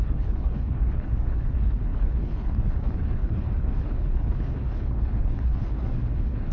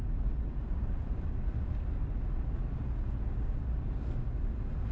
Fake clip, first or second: first